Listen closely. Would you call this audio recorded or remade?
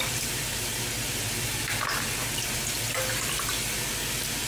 recorded